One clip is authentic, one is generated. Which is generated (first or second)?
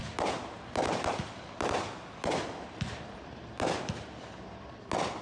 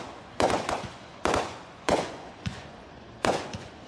second